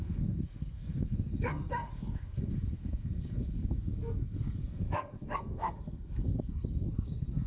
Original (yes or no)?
no